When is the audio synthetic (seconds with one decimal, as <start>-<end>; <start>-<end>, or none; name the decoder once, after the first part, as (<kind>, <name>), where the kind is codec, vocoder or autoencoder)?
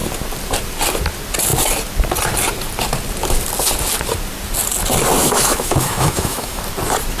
5.2-6.6 (autoencoder, DAC-VAE)